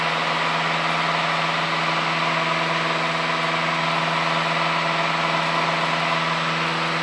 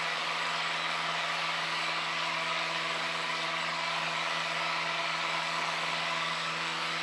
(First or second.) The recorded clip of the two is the first